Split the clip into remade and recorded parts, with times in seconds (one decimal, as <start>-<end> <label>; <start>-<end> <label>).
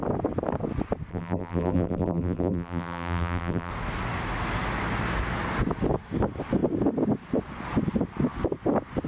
0.0-1.1 recorded; 1.1-3.7 remade; 3.7-9.1 recorded